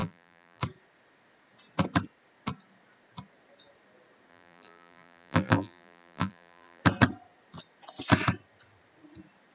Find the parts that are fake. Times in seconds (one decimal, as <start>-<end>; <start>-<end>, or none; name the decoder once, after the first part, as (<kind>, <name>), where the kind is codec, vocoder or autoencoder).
0.0-0.6 (vocoder, BigVGAN v2); 4.3-6.8